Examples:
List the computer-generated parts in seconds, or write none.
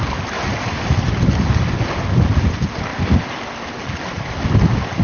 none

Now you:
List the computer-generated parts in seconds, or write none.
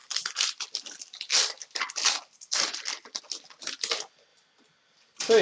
0.0-3.2; 4.3-5.4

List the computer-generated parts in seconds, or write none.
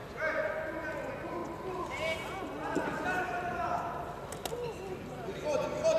none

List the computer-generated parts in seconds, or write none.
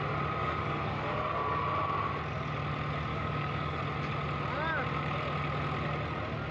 0.4-1.6; 3.1-3.8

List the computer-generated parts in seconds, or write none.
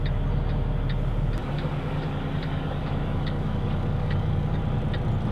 1.4-4.6